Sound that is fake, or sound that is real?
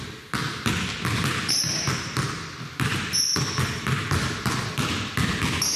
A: real